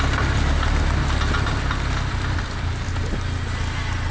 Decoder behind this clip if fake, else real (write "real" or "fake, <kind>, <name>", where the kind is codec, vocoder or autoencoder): real